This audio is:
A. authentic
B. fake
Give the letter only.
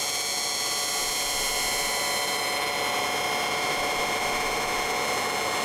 A